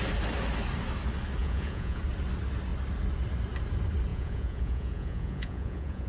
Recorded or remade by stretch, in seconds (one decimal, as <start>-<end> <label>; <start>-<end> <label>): 0.0-1.4 recorded; 1.4-2.0 remade; 2.0-4.1 recorded; 4.1-6.1 remade